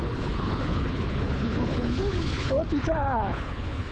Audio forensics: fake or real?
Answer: fake